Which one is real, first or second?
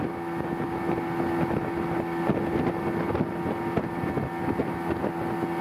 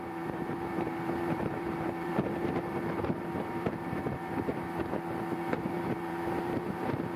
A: first